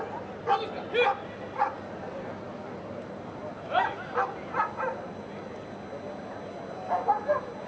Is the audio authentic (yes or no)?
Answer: yes